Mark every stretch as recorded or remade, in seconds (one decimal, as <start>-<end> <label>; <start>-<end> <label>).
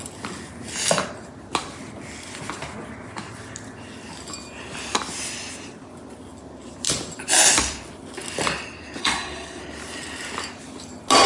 0.0-9.0 recorded; 9.0-9.6 remade; 9.6-11.3 recorded